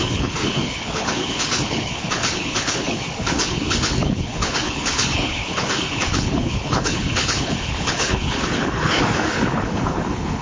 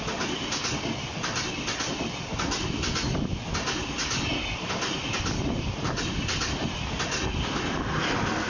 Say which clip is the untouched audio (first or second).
second